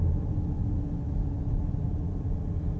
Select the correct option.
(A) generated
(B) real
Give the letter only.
B